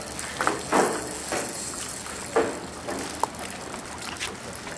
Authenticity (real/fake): real